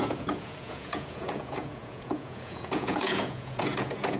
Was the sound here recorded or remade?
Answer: remade